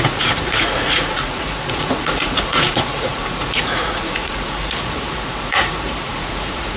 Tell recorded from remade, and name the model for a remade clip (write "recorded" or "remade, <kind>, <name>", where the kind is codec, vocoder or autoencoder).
remade, vocoder, Vocos